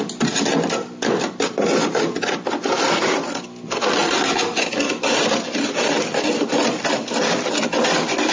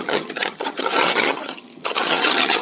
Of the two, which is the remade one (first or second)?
second